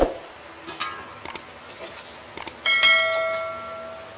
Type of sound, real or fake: real